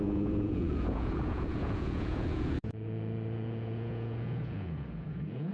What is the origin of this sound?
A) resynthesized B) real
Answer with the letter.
A